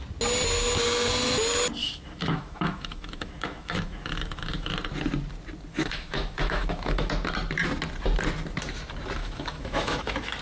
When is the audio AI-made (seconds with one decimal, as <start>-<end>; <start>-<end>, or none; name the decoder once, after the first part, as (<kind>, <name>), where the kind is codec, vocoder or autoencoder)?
1.8-4.7 (autoencoder, DAC-VAE); 5.7-7.1; 9.2-10.4